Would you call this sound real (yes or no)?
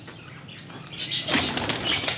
yes